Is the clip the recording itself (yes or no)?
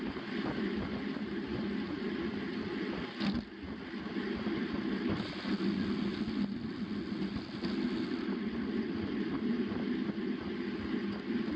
yes